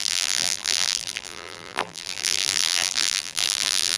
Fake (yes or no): yes